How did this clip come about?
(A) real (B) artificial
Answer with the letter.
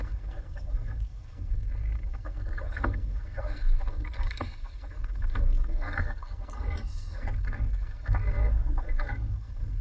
B